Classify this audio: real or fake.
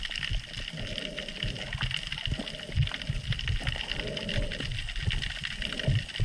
real